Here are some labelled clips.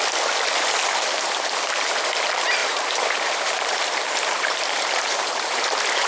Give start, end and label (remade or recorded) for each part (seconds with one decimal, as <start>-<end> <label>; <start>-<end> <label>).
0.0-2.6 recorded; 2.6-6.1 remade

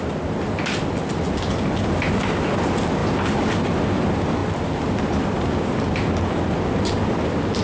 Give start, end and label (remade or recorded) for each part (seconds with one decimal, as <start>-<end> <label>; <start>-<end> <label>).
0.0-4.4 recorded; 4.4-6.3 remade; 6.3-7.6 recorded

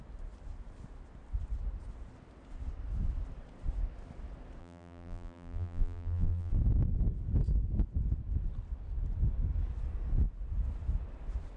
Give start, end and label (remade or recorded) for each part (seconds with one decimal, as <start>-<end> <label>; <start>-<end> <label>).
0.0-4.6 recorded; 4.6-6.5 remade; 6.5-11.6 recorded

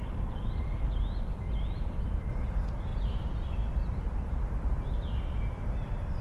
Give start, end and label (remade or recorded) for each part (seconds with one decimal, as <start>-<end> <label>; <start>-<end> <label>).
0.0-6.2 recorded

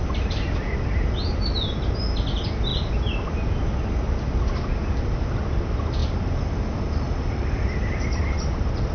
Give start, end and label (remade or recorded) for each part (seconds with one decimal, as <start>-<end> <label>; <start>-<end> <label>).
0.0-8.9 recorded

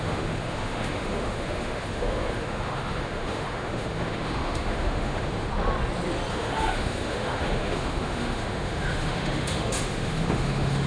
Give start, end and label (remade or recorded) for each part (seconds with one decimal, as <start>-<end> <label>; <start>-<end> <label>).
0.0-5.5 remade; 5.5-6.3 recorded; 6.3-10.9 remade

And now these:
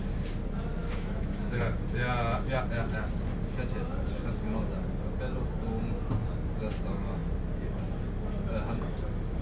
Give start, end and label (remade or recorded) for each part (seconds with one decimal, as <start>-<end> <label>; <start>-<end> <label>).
0.0-0.8 recorded; 0.8-1.6 remade; 1.6-9.4 recorded